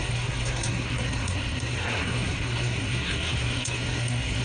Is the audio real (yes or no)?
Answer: no